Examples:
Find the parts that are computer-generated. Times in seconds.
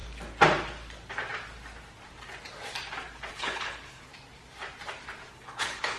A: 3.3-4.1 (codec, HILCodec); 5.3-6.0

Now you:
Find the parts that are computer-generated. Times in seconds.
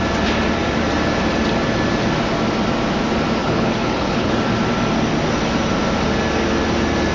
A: 3.4-4.3 (codec, HILCodec)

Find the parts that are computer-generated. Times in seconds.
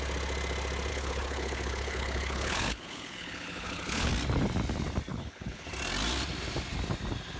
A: 0.9-4.1 (codec, HILCodec); 5.1-5.7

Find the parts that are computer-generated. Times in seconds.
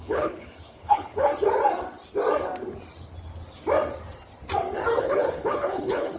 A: 0.0-1.3 (codec, HILCodec); 5.0-6.2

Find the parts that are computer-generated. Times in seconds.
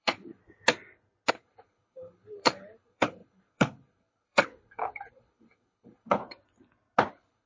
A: 0.0-0.4 (codec, HILCodec); 1.3-6.2; 7.1-7.5